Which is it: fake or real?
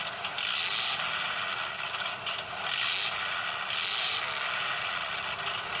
real